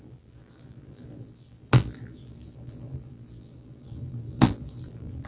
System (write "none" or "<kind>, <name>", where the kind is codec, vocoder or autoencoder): vocoder, BigVGAN v2